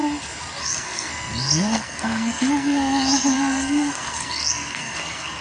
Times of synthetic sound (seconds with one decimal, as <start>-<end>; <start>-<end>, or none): 0.6-5.4